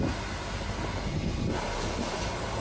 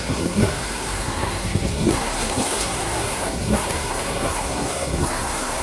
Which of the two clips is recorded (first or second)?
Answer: first